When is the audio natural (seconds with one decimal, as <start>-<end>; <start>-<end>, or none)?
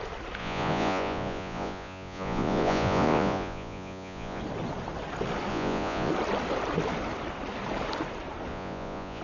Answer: 0.0-0.4; 4.4-5.5; 6.1-8.5